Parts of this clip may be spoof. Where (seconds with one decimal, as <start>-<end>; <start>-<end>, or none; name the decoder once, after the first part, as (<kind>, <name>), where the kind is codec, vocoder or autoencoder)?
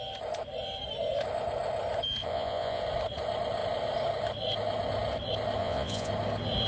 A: 2.2-2.8 (vocoder, Vocos); 5.6-6.1